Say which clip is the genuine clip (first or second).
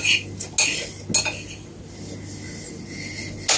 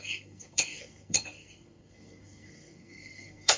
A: first